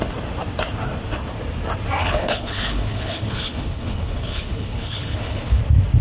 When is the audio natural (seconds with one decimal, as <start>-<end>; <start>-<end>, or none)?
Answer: 0.0-2.0; 5.6-6.0